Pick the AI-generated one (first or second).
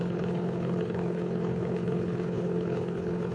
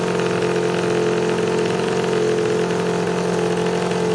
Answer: first